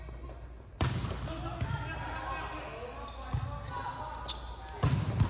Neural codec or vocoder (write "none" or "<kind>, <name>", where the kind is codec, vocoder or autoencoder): none